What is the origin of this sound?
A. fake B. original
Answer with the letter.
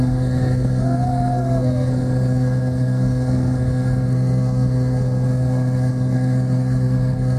A